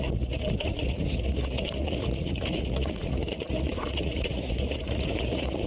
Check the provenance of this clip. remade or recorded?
remade